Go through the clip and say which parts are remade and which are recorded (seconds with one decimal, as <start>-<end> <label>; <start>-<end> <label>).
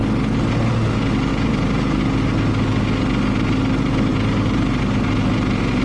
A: 0.0-1.3 recorded; 1.3-2.0 remade; 2.0-4.1 recorded; 4.1-4.8 remade; 4.8-5.8 recorded